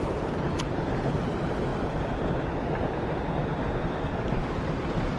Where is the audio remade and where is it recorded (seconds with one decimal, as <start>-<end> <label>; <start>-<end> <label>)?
0.0-3.4 recorded; 3.4-5.2 remade